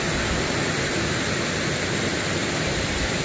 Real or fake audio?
real